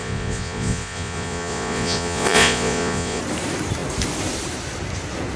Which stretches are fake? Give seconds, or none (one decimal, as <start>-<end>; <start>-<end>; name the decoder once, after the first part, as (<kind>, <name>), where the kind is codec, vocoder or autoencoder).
0.0-3.2 (vocoder, Vocos)